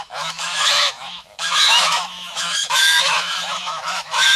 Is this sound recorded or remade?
remade